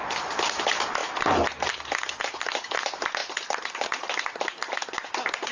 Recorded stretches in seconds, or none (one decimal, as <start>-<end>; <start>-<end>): 0.0-5.5